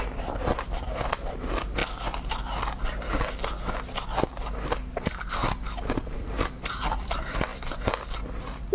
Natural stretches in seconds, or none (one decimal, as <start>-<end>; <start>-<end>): 1.8-5.9; 7.5-8.7